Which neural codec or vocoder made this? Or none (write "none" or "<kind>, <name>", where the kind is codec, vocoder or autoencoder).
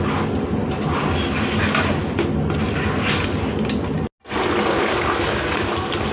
none